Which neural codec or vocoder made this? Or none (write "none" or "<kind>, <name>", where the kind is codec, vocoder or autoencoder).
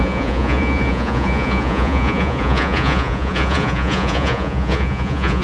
vocoder, Vocos